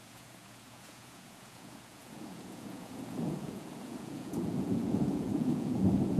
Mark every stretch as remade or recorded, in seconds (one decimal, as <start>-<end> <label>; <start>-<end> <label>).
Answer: 0.0-6.2 remade